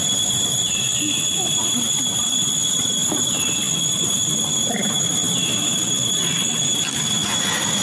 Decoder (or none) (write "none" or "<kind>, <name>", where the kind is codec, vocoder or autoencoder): vocoder, BigVGAN v2